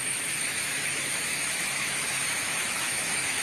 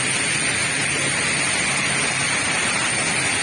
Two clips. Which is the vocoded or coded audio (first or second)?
first